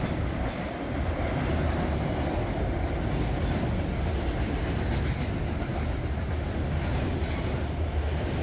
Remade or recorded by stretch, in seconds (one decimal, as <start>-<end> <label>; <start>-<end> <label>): 0.0-8.4 recorded